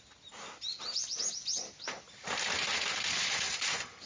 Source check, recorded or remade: recorded